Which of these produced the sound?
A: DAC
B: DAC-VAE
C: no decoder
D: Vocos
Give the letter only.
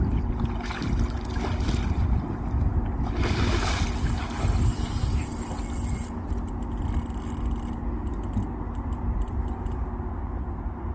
C